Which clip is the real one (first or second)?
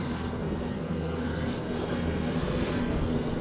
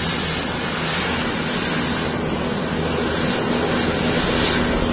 second